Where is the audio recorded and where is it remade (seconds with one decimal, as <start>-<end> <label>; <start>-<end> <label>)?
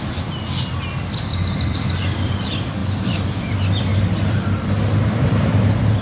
0.0-1.3 recorded; 1.3-2.3 remade; 2.3-3.9 recorded; 3.9-4.6 remade; 4.6-6.0 recorded